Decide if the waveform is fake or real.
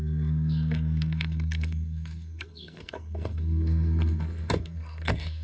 fake